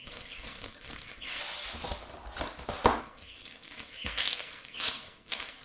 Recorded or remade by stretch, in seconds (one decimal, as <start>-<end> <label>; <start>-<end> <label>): 0.0-1.4 remade; 1.4-3.0 recorded; 3.0-5.6 remade